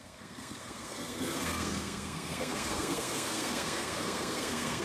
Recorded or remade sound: remade